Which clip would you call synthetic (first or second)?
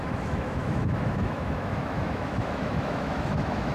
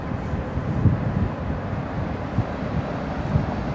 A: first